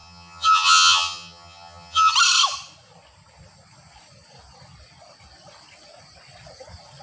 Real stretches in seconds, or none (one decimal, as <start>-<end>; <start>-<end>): 2.1-7.0